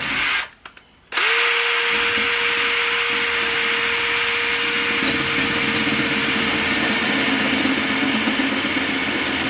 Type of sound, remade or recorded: recorded